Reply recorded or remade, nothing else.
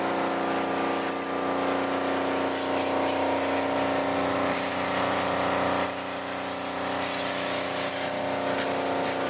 recorded